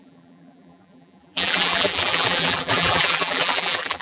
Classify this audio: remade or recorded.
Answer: remade